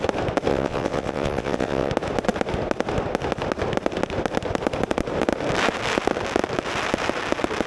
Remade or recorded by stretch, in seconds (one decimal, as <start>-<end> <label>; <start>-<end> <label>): 0.0-0.5 recorded; 0.5-1.9 remade; 1.9-7.7 recorded